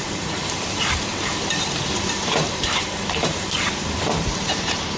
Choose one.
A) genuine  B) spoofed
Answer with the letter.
B